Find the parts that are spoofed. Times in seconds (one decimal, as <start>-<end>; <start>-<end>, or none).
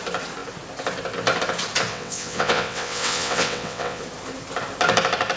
1.9-4.0